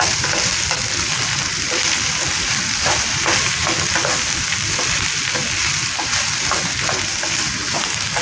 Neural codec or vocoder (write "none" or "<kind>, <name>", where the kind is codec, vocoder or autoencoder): vocoder, BigVGAN v2